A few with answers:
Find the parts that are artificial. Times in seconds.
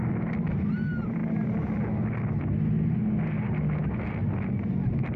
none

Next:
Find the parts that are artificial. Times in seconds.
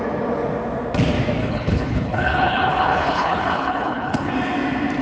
1.4-4.3 (codec, HILCodec)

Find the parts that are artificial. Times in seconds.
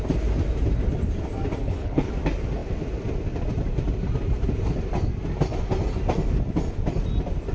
1.6-2.1 (codec, HILCodec)